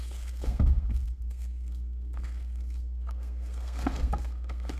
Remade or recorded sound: remade